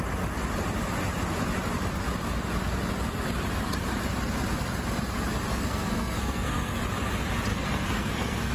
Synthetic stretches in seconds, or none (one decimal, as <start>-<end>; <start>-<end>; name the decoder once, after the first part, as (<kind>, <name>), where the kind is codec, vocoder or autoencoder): 5.5-6.8 (codec, SNAC); 7.5-8.5